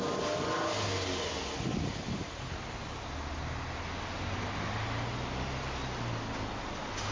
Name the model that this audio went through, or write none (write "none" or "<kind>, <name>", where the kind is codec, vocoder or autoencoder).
none